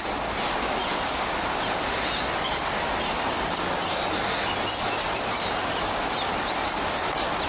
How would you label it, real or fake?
real